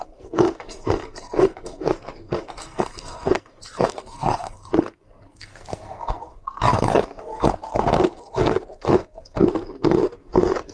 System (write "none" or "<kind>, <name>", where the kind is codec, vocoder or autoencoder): codec, SNAC